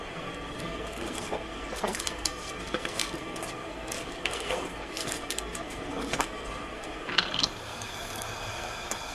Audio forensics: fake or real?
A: fake